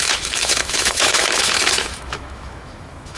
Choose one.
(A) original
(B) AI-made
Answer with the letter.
B